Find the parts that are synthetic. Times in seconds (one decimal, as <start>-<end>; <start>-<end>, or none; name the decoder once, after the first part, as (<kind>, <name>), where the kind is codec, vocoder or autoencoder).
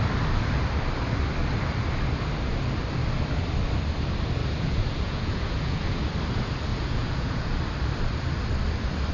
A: 4.4-6.1 (vocoder, Vocos); 6.7-7.6